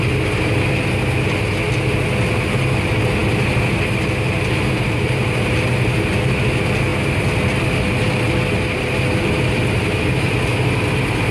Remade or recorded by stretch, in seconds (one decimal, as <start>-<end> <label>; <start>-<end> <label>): 0.0-11.3 recorded